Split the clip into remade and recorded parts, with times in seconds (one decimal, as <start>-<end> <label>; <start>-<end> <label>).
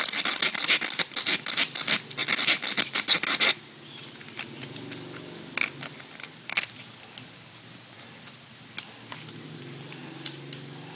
0.0-11.0 recorded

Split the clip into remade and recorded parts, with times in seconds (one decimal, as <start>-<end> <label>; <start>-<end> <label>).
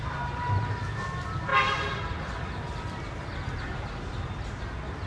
0.0-1.5 recorded; 1.5-4.6 remade; 4.6-5.1 recorded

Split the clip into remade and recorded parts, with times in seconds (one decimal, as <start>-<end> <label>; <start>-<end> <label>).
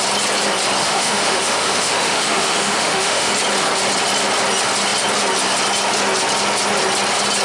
0.0-0.8 recorded; 0.8-3.3 remade; 3.3-7.4 recorded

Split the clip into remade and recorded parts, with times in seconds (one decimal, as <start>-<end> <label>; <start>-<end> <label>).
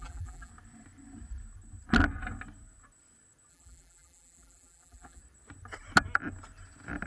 0.0-0.5 remade; 0.5-3.5 recorded; 3.5-5.2 remade; 5.2-7.1 recorded